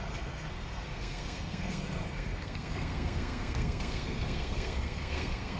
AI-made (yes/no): yes